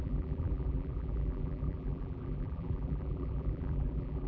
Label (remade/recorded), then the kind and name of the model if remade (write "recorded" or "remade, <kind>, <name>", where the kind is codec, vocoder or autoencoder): remade, vocoder, BigVGAN v2